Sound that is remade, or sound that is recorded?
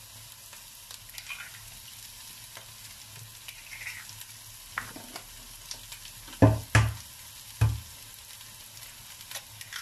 recorded